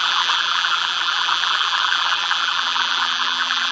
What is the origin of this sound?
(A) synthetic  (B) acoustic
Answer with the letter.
A